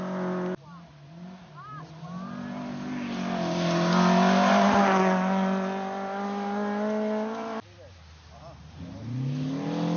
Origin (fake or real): real